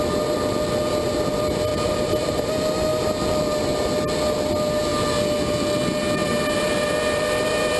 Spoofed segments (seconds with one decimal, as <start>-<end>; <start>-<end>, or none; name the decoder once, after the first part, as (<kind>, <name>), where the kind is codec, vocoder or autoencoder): 1.7-2.5 (vocoder, BigVGAN v2); 6.2-7.8